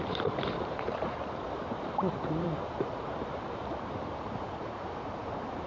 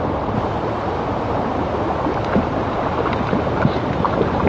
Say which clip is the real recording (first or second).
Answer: second